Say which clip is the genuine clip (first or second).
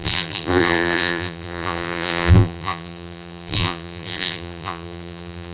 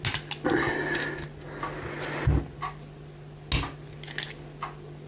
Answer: second